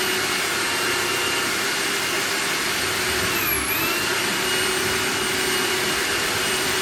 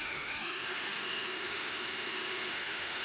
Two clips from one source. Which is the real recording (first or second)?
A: first